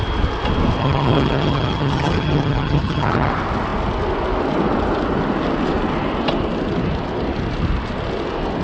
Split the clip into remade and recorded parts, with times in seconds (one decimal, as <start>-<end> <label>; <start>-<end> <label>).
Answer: 0.0-0.8 recorded; 0.8-3.3 remade; 3.3-8.6 recorded